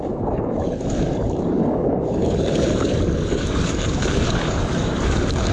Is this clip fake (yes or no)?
yes